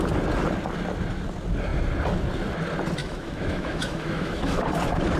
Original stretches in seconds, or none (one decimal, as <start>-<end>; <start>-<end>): 0.0-3.0; 4.6-5.2